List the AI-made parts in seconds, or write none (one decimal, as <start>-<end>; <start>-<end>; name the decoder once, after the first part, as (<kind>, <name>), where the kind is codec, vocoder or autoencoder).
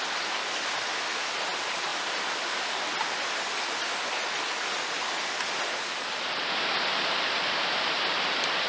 none